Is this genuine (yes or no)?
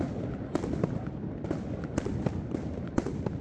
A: yes